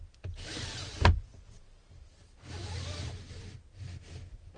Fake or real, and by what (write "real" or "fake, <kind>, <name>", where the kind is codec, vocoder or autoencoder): real